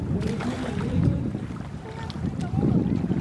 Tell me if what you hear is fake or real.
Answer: real